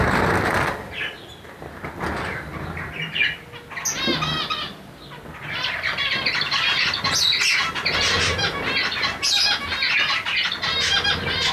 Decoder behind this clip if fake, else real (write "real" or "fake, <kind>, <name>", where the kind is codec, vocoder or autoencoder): real